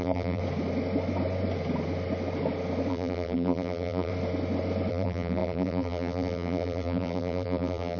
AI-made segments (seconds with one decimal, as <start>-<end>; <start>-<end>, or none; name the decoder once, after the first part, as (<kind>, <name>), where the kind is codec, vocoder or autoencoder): 0.0-0.4 (vocoder, BigVGAN v2); 2.9-4.1; 4.9-8.0